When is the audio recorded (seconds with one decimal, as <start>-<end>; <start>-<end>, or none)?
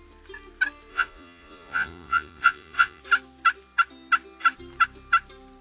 0.0-0.9; 3.0-5.6